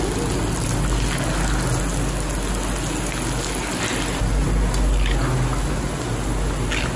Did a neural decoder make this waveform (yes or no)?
no